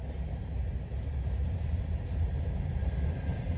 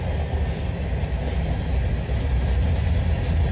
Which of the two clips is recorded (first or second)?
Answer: second